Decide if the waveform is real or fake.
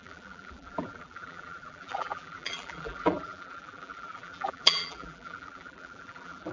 fake